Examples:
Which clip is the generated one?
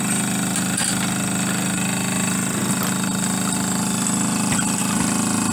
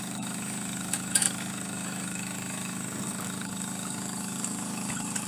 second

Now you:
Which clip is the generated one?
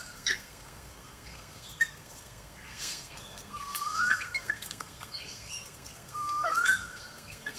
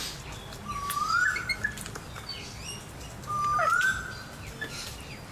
first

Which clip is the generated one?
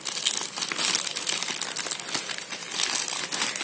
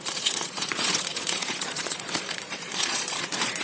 second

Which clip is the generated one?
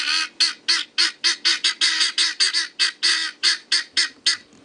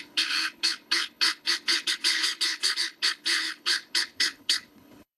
second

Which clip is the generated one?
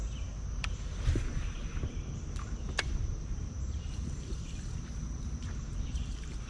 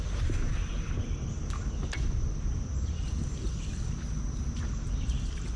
first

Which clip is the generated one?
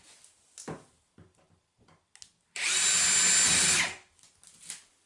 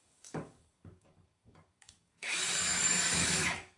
second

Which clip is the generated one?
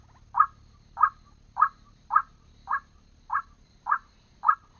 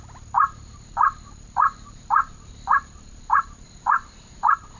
second